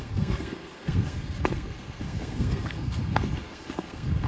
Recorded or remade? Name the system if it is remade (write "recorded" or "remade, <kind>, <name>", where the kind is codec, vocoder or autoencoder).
remade, codec, SNAC